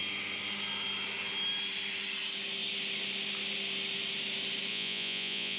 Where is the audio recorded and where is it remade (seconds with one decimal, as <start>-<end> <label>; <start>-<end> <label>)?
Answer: 0.0-4.7 recorded; 4.7-5.6 remade